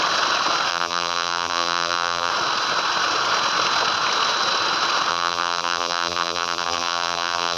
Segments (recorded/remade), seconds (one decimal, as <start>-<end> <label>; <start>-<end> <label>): 0.0-0.7 recorded; 0.7-2.3 remade; 2.3-5.1 recorded; 5.1-7.6 remade